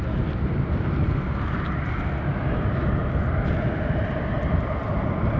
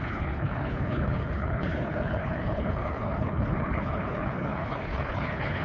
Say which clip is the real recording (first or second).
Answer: first